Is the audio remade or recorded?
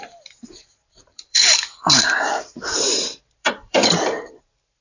remade